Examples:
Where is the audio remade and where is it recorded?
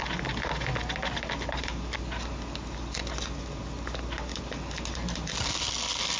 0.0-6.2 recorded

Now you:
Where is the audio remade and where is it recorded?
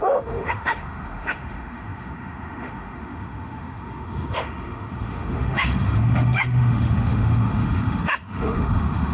0.0-9.1 remade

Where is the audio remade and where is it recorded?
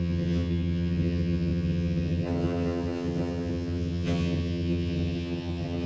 0.0-5.9 remade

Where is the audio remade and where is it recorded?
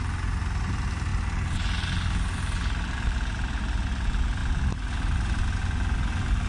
0.0-6.5 recorded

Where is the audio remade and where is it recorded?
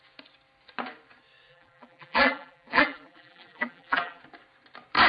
0.0-1.5 recorded; 1.5-4.2 remade; 4.2-5.1 recorded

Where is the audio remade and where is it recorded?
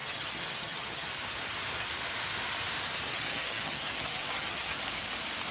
0.0-1.1 remade; 1.1-3.1 recorded; 3.1-4.8 remade; 4.8-5.5 recorded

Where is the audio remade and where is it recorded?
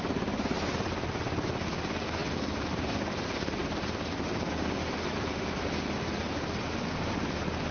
0.0-7.7 recorded